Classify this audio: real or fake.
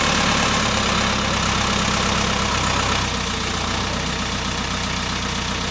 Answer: real